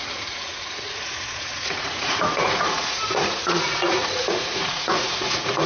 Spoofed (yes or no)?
yes